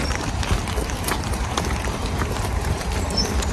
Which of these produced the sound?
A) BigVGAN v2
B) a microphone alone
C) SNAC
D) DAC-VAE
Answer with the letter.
A